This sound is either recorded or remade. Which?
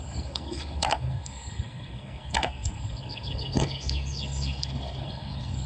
remade